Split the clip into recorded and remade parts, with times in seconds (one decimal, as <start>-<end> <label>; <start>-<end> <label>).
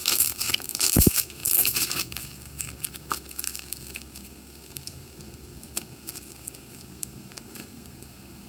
0.0-8.5 remade